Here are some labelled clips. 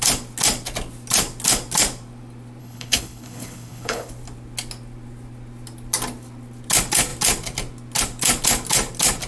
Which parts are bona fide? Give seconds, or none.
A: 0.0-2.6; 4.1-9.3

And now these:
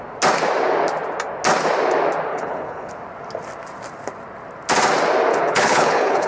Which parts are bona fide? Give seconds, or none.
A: 0.0-2.3; 2.9-5.3